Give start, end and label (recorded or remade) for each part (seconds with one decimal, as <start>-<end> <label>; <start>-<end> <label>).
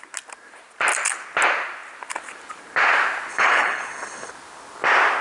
0.0-3.3 recorded; 3.3-4.3 remade; 4.3-5.2 recorded